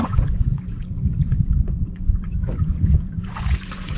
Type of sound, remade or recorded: remade